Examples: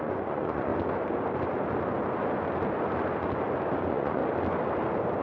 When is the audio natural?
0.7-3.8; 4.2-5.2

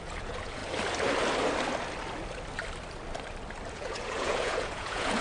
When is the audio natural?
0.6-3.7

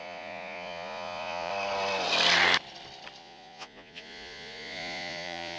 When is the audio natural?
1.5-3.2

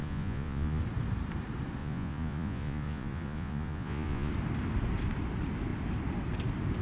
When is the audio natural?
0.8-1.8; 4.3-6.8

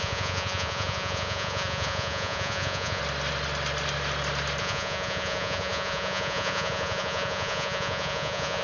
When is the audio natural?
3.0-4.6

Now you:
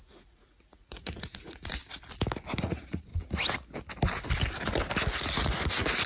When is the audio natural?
1.8-2.6; 3.1-6.1